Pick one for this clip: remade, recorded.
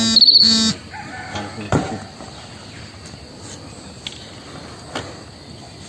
recorded